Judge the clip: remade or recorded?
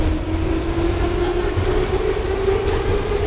recorded